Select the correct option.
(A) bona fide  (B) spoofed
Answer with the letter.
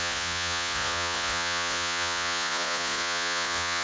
B